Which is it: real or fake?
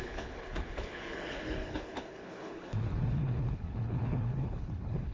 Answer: fake